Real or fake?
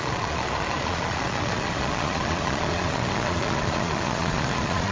fake